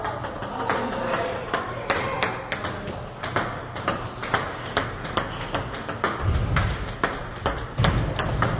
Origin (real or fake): real